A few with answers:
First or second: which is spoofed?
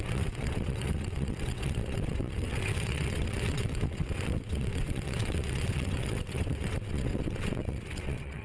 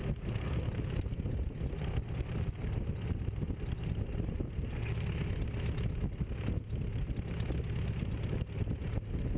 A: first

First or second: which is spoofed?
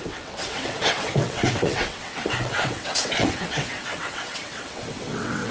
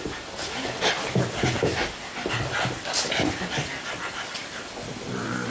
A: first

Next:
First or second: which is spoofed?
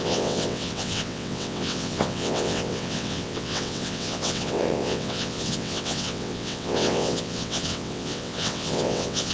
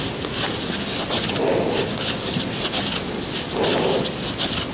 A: first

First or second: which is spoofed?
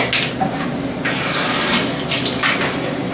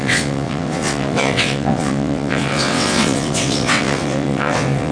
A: second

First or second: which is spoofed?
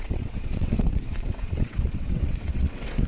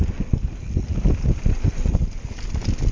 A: first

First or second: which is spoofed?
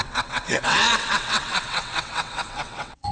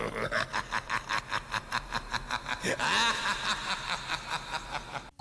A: first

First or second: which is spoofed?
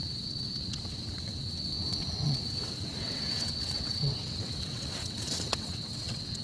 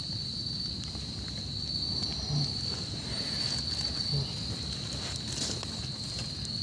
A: first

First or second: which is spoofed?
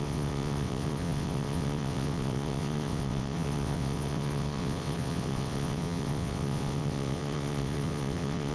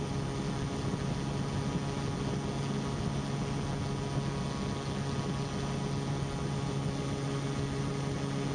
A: first